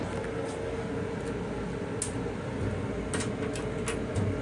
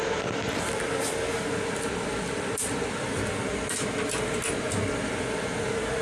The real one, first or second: first